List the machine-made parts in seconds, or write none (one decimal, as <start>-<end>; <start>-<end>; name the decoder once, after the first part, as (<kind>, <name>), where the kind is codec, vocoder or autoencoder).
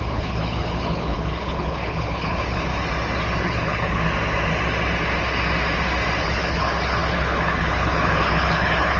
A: 0.0-2.7 (codec, HILCodec); 3.4-4.0; 6.2-9.0